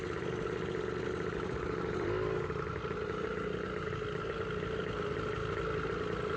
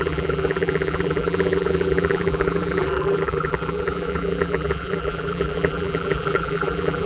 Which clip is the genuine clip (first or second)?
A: first